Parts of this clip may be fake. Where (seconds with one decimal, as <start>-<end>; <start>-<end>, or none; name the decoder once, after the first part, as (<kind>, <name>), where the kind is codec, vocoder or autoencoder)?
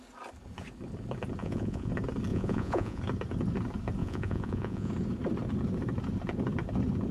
1.4-1.9 (vocoder, Vocos); 2.3-3.0; 4.0-4.9